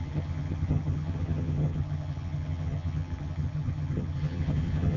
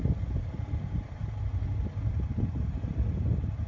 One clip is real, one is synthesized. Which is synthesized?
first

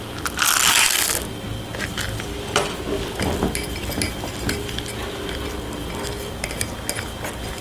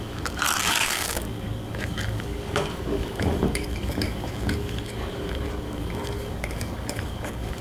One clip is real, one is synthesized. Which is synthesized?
second